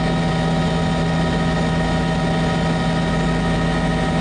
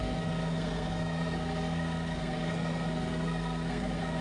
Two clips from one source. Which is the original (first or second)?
first